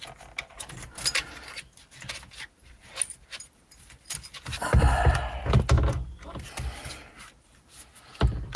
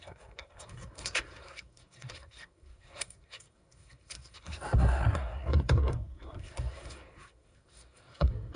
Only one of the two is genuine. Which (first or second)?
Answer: first